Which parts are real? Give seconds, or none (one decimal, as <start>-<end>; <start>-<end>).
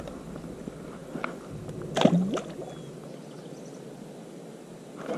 0.0-5.2